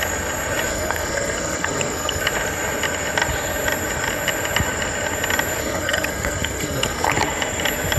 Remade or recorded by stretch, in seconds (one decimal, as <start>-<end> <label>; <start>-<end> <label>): 0.0-0.7 recorded; 0.7-2.2 remade; 2.2-5.6 recorded; 5.6-7.1 remade; 7.1-8.0 recorded